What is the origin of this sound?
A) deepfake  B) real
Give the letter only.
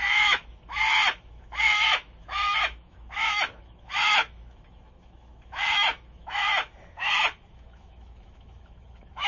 A